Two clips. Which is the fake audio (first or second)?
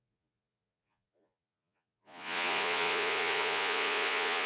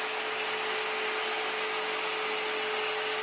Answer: first